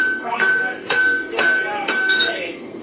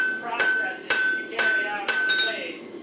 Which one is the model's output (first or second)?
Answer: first